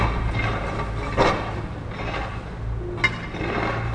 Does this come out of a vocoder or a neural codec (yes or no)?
no